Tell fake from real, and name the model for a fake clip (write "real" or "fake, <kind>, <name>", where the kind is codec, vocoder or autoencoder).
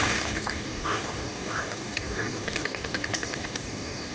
fake, codec, DAC